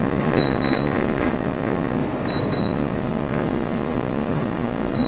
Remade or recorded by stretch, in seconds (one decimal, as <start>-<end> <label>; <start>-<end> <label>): 0.0-2.0 remade; 2.0-2.6 recorded; 2.6-5.1 remade